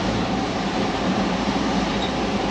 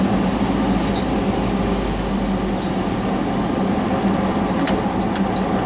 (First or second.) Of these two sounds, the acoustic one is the second